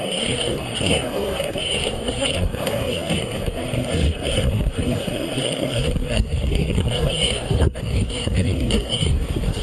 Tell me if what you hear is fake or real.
fake